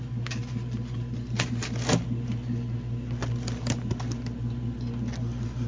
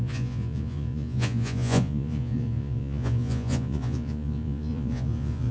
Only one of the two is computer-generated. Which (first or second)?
second